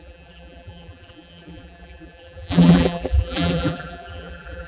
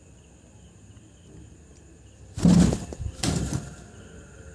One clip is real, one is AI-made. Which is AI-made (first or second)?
first